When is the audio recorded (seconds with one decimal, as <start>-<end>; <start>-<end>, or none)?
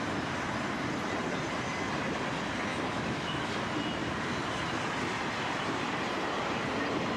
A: 0.0-2.7; 3.5-7.2